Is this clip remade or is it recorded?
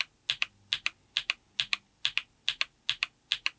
recorded